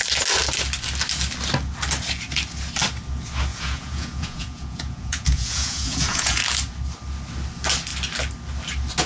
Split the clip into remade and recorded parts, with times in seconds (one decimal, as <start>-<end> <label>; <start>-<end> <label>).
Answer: 0.0-3.5 recorded; 3.5-6.4 remade; 6.4-9.1 recorded